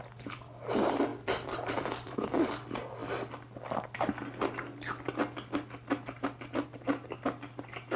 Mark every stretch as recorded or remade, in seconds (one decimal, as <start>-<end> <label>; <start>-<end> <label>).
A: 0.0-1.1 recorded; 1.1-2.5 remade; 2.5-8.0 recorded

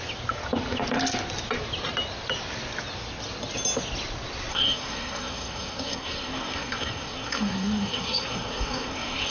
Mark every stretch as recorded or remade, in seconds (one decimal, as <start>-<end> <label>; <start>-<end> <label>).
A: 0.0-4.5 recorded; 4.5-9.3 remade

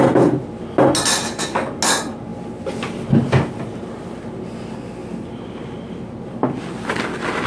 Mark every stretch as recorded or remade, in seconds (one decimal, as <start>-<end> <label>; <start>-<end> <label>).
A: 0.0-7.5 recorded

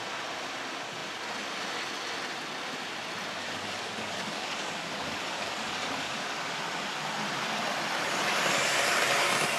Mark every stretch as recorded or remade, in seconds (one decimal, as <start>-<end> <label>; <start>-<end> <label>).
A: 0.0-3.4 recorded; 3.4-6.5 remade; 6.5-9.6 recorded